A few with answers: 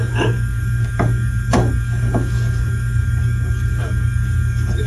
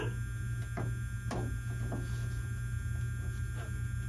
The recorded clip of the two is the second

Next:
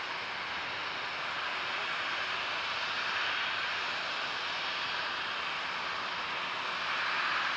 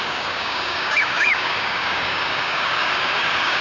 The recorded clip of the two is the first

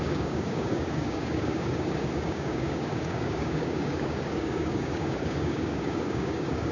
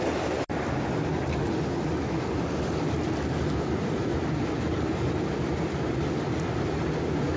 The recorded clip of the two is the second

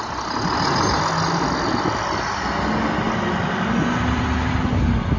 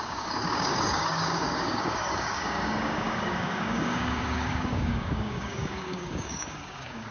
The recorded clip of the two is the first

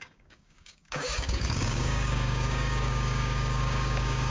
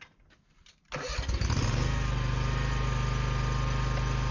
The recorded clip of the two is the second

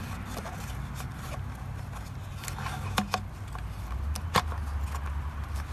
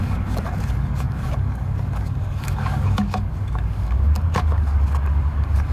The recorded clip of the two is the first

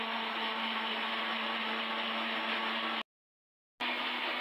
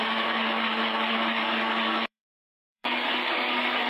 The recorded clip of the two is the first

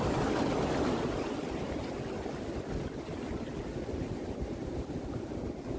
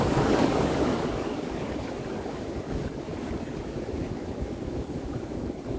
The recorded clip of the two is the first